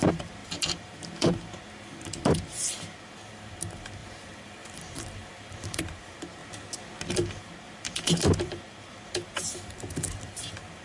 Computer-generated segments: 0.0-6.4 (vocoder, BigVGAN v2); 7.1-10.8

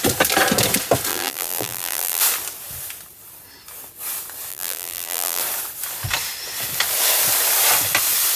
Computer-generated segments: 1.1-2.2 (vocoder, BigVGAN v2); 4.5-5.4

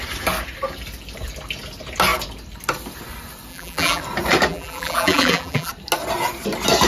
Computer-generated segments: 3.5-4.0 (vocoder, BigVGAN v2); 4.5-5.7